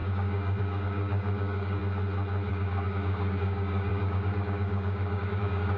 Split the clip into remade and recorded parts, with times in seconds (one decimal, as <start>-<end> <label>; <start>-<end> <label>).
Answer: 0.0-1.8 remade; 1.8-2.5 recorded; 2.5-5.8 remade